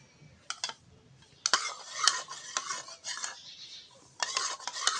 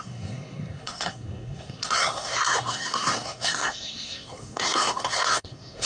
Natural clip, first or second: first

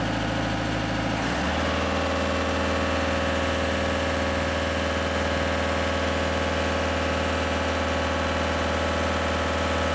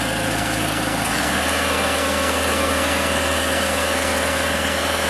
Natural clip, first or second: first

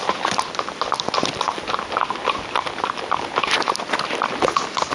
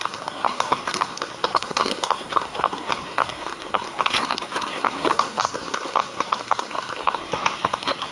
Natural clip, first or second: first